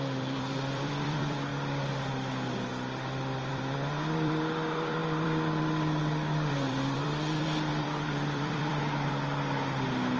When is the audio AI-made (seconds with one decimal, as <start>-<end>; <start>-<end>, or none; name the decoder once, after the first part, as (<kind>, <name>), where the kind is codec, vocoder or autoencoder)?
0.0-1.5 (vocoder, BigVGAN v2); 3.5-8.8